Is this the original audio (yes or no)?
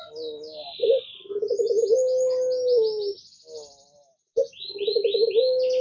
yes